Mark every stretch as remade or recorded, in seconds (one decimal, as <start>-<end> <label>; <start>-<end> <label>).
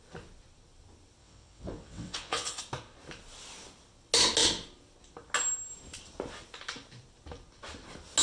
0.0-1.2 recorded; 1.2-2.6 remade; 2.6-8.2 recorded